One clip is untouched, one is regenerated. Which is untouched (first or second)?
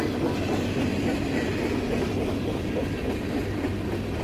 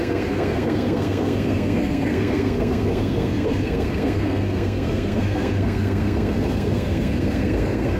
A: first